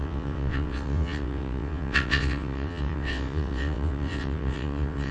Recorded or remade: remade